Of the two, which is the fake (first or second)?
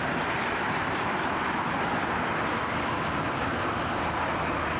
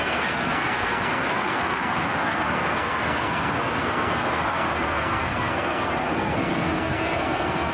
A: second